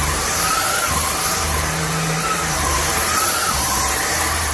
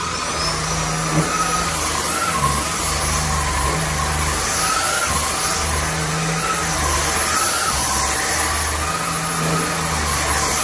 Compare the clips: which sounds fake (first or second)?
first